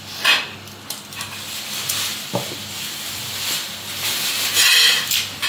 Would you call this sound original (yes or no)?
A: yes